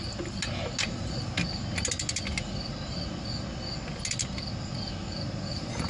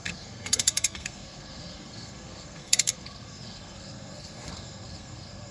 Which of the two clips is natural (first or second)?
first